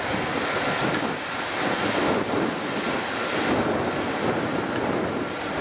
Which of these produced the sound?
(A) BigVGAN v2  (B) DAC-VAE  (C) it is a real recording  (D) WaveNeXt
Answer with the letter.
C